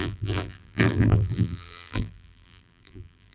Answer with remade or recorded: remade